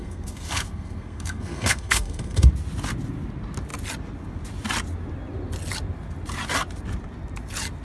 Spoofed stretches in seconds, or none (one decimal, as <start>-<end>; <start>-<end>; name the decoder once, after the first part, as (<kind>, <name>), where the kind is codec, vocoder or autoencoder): 0.0-2.5 (codec, SNAC)